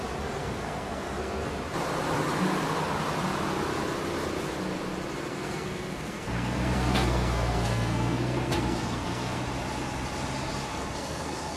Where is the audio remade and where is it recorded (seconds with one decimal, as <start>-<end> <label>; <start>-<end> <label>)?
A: 0.0-0.4 recorded; 0.4-1.5 remade; 1.5-5.3 recorded; 5.3-9.4 remade; 9.4-10.7 recorded; 10.7-11.6 remade